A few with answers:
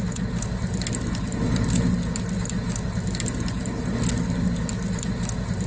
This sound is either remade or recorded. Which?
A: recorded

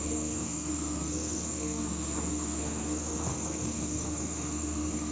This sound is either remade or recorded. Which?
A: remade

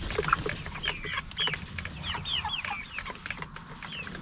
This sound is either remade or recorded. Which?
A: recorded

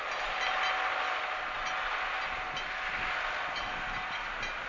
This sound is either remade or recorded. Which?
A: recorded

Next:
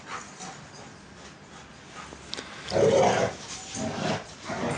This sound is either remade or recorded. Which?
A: recorded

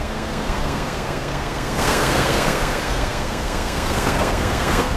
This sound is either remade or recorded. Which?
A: remade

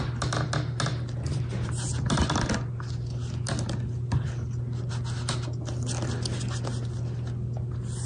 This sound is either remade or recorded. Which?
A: recorded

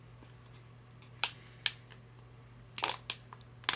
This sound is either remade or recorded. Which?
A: recorded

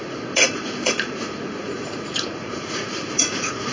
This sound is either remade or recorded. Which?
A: remade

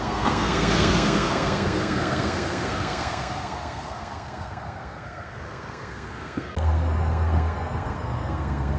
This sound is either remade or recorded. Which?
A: remade